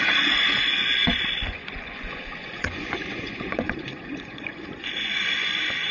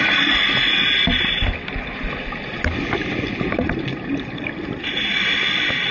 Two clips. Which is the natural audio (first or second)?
second